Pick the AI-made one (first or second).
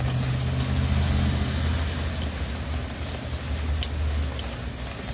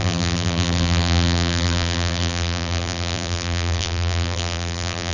second